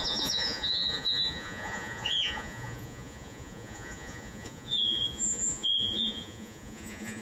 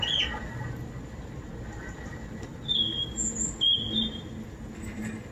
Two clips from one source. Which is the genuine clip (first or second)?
second